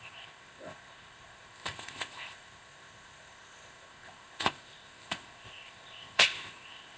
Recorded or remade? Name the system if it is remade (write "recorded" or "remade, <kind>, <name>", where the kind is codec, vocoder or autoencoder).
remade, codec, ZipCodec